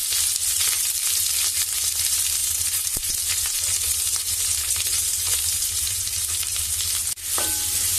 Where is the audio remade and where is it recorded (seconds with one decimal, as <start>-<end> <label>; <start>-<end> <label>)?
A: 0.0-2.4 recorded; 2.4-6.3 remade; 6.3-8.0 recorded